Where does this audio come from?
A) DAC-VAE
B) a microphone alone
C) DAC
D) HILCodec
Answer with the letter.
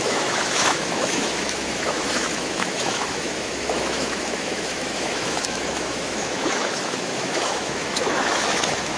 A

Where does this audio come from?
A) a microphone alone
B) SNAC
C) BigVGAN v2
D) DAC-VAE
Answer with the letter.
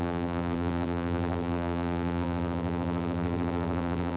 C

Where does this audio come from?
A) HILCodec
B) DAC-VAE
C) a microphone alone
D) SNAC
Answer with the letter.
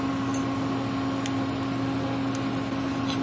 C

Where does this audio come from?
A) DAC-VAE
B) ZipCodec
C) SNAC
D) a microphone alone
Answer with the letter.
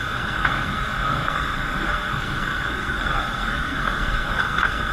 C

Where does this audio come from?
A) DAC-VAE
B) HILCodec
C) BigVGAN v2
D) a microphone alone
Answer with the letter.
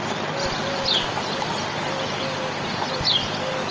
C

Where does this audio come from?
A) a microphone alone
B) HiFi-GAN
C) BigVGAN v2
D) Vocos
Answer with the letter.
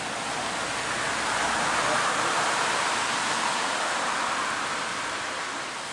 A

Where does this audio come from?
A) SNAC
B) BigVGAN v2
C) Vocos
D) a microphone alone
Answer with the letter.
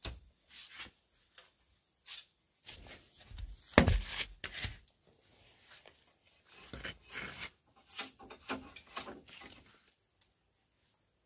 D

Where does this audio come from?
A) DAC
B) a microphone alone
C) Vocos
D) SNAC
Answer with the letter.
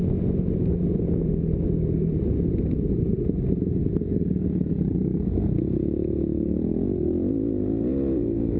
B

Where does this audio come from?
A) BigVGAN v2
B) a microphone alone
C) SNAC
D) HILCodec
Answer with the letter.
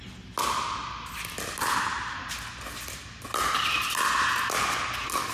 B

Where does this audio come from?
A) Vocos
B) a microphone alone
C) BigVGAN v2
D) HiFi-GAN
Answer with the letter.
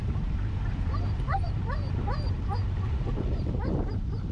C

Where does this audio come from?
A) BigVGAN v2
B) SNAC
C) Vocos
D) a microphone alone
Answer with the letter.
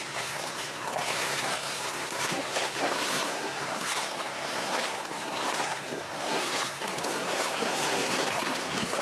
B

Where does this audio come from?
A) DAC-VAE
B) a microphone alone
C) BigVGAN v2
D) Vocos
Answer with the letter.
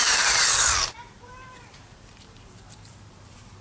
C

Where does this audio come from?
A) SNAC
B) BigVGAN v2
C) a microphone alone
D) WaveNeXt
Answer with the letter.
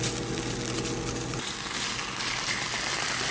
C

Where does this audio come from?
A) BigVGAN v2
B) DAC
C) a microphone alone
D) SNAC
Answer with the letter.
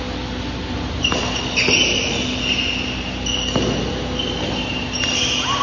C